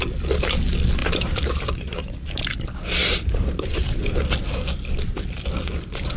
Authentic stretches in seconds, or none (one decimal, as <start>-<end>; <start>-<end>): 0.0-1.0; 2.4-3.0; 4.0-6.2